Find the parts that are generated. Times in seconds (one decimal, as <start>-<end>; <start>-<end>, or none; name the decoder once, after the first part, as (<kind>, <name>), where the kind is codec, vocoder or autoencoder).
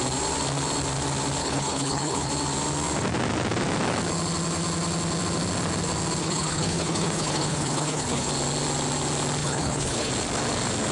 1.4-2.3 (codec, HILCodec); 6.2-8.3; 9.4-10.1